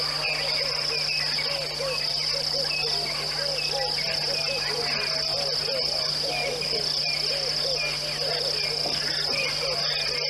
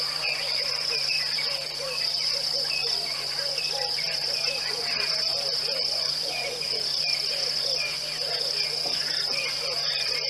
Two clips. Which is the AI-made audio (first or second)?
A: second